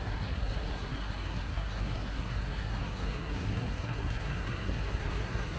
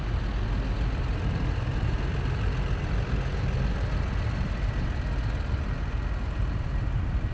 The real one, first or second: second